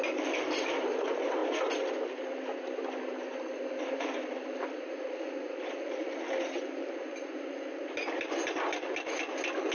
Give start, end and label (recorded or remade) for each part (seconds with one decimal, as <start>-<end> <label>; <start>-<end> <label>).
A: 0.0-1.4 remade; 1.4-3.0 recorded; 3.0-9.7 remade